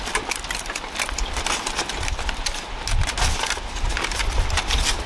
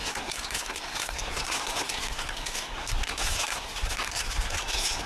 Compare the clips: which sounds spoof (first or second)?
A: second